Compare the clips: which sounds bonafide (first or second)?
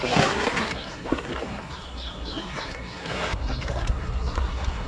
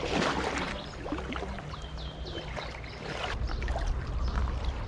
second